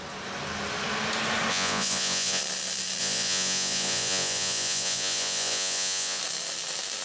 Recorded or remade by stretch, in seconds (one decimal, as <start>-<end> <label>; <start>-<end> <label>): 0.0-1.5 recorded; 1.5-2.4 remade; 2.4-3.0 recorded; 3.0-6.2 remade; 6.2-7.0 recorded